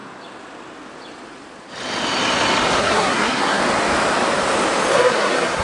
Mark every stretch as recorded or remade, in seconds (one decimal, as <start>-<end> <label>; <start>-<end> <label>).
0.0-2.8 recorded; 2.8-3.6 remade; 3.6-4.9 recorded; 4.9-5.6 remade